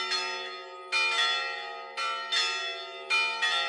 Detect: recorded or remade recorded